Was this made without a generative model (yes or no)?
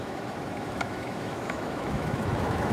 no